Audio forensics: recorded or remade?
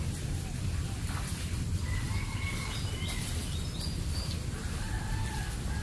recorded